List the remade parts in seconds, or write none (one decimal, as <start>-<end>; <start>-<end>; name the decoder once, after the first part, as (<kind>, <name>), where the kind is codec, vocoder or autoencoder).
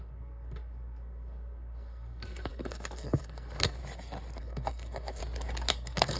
0.0-3.8 (codec, SNAC); 4.4-5.2; 5.7-6.2